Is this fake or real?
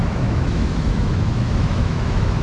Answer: fake